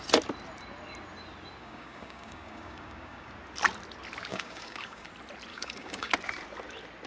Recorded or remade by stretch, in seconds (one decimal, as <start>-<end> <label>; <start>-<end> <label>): 0.0-1.6 recorded; 1.6-3.3 remade; 3.3-4.3 recorded; 4.3-5.1 remade; 5.1-5.5 recorded; 5.5-6.1 remade; 6.1-7.1 recorded